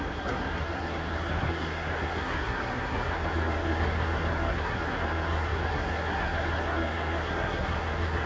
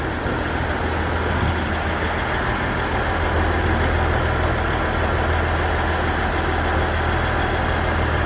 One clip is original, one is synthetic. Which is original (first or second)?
second